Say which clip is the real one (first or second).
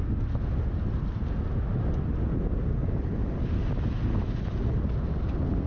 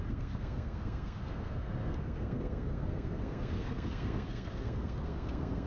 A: first